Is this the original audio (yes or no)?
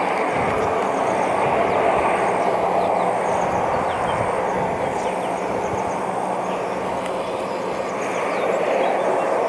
yes